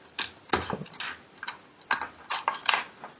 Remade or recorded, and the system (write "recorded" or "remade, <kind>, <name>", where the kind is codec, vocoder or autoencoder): recorded